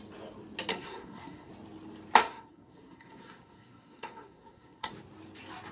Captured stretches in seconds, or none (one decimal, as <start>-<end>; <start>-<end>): 0.0-0.7; 1.5-2.2; 4.9-5.7

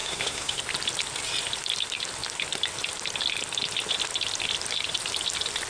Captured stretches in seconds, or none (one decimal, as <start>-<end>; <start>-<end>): 0.6-5.7

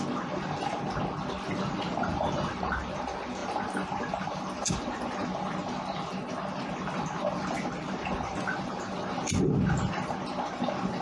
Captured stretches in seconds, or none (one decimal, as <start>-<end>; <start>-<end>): 0.0-11.0

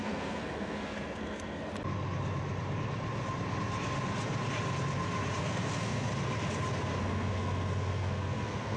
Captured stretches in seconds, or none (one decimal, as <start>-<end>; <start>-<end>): 1.6-5.4; 6.1-7.0

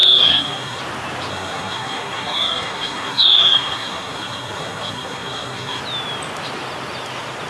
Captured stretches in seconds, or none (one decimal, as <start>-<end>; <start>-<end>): 0.8-1.3; 5.8-7.5

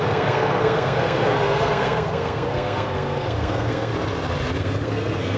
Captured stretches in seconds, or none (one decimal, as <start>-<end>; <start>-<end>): 3.9-4.6

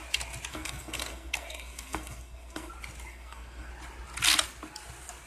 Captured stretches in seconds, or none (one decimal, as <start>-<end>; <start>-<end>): 0.0-0.5; 2.7-3.1; 3.7-5.3